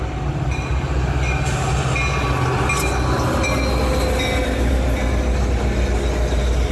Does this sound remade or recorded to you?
recorded